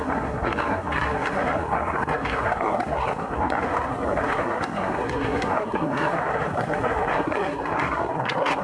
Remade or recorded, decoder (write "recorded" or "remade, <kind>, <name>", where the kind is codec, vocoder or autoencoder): remade, codec, SNAC